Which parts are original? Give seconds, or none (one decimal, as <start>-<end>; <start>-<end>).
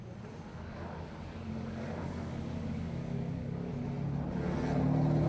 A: 0.0-0.5; 3.7-5.3